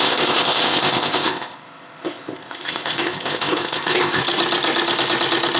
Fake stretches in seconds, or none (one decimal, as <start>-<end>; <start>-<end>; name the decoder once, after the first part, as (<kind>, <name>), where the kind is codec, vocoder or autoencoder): 0.0-4.2 (codec, ZipCodec)